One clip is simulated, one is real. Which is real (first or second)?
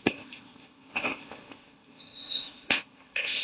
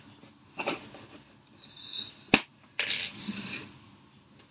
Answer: second